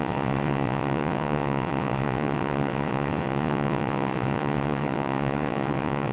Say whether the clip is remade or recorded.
remade